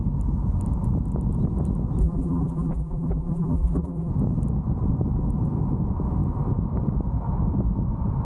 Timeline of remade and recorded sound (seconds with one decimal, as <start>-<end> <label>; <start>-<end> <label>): 0.0-2.0 recorded; 2.0-4.1 remade; 4.1-8.2 recorded